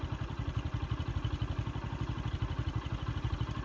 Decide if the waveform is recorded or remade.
recorded